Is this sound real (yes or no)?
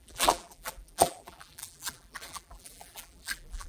no